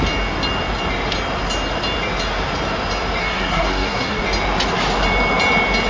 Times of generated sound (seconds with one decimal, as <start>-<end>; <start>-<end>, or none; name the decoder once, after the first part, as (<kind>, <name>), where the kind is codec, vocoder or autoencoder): 3.2-4.2 (codec, SNAC)